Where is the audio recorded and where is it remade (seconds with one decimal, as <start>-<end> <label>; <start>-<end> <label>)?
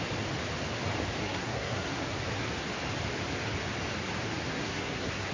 0.0-1.2 recorded; 1.2-2.1 remade; 2.1-4.5 recorded; 4.5-5.3 remade